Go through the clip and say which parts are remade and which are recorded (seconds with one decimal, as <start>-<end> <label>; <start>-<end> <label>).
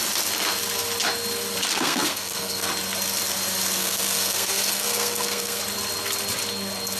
0.0-1.7 recorded; 1.7-2.7 remade; 2.7-3.8 recorded; 3.8-5.6 remade; 5.6-7.0 recorded